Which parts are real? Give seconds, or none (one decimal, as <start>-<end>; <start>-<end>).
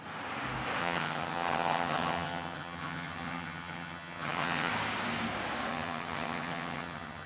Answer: 0.0-0.8; 4.7-5.7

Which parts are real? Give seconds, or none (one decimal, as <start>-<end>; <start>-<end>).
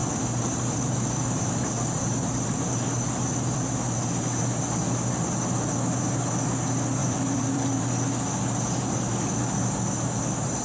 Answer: 0.0-7.0; 7.9-10.6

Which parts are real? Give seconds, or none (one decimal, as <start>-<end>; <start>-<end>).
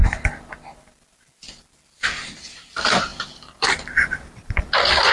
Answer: 0.0-3.1; 4.6-5.1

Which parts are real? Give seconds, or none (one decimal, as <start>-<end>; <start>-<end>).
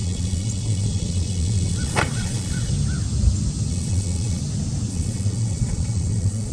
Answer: 2.7-3.7; 4.4-4.9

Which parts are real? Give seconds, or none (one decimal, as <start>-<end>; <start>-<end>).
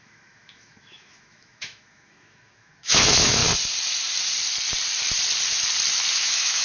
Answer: 3.4-6.1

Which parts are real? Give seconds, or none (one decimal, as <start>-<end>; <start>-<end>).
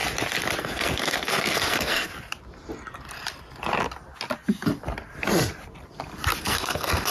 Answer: 0.0-0.6; 2.1-6.4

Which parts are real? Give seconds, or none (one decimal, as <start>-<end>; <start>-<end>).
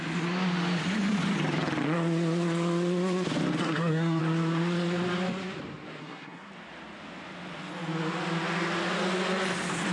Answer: 0.0-3.6; 4.2-6.0; 6.5-9.9